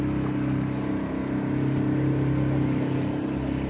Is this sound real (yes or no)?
yes